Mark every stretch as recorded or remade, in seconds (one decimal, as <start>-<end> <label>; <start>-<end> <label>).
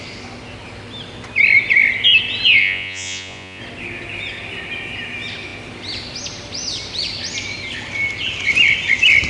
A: 0.0-2.6 recorded; 2.6-3.6 remade; 3.6-9.3 recorded